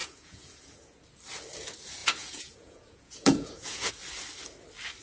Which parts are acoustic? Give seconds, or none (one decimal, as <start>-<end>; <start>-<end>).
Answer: 1.0-2.0; 3.9-5.0